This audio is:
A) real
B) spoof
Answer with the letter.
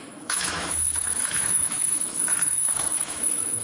B